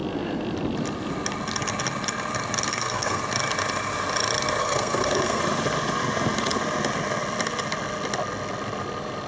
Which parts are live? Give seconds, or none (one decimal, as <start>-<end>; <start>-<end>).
0.0-2.7; 3.2-4.6; 5.4-9.3